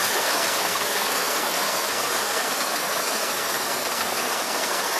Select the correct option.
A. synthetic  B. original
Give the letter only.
A